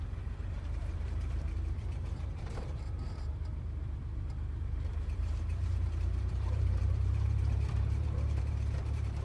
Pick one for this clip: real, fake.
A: fake